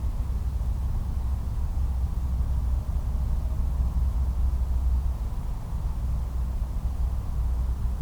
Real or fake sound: real